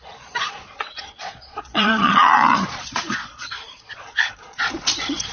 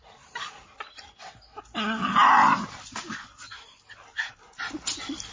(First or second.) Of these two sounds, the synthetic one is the first